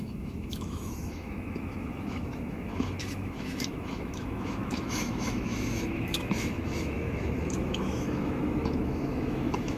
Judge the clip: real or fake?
fake